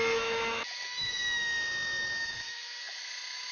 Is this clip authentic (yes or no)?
no